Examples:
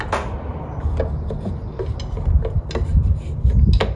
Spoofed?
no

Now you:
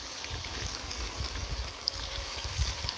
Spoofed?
yes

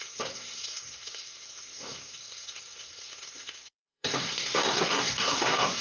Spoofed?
yes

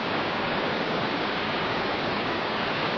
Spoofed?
yes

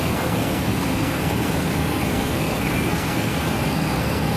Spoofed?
yes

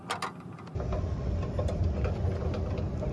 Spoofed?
no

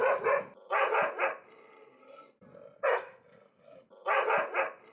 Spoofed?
no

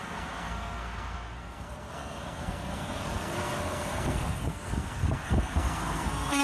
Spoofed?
yes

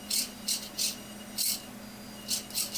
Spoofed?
no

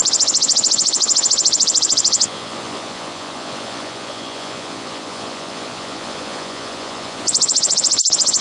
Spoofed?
yes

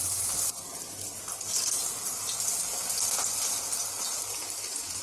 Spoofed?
no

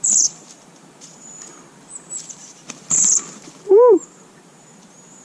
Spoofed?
yes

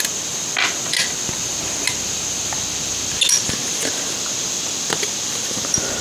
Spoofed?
no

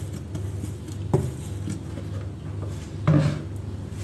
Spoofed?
no